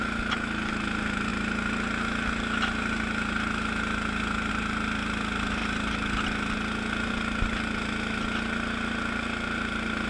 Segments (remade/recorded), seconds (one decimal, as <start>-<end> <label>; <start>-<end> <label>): 0.0-10.1 recorded